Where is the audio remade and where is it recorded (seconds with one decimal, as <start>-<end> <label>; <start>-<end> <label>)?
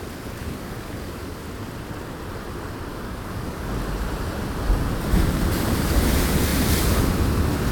0.0-0.4 recorded; 0.4-1.4 remade; 1.4-2.9 recorded; 2.9-3.7 remade; 3.7-7.7 recorded